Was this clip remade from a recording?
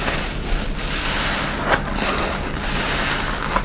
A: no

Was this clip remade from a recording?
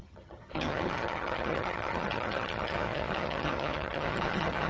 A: yes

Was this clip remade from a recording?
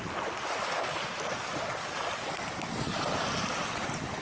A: no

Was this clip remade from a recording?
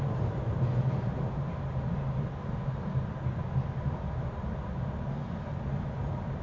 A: no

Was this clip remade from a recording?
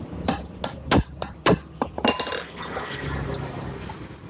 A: no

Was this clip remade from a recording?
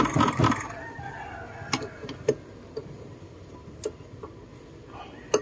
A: no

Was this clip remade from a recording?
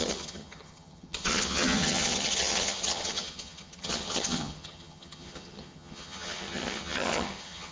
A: yes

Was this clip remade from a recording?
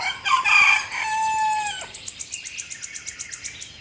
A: no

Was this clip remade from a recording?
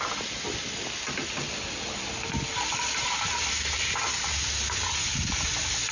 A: no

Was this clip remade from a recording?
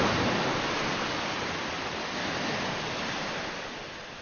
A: no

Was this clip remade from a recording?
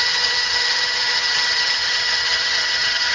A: yes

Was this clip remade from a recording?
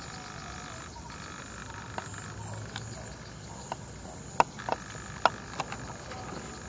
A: no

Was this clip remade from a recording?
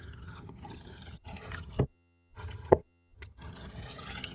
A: yes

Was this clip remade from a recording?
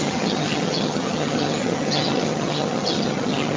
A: yes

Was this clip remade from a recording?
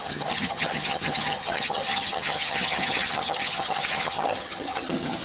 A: yes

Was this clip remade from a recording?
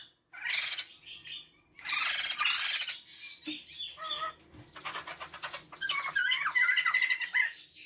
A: no